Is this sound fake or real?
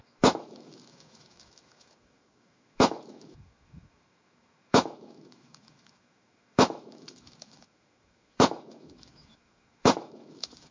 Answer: fake